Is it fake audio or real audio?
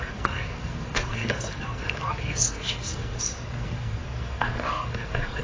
fake